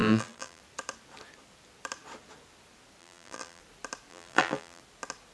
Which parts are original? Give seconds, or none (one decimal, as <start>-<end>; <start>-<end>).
0.6-3.0; 3.6-4.1; 4.8-5.3